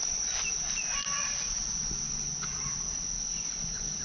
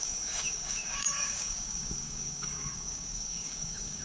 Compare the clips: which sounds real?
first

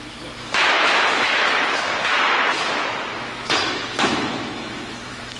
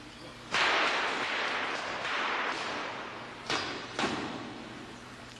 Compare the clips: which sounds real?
second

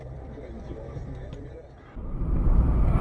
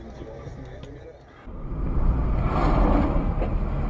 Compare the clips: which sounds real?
second